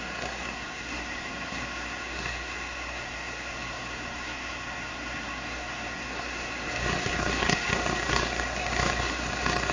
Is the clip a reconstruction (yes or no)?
yes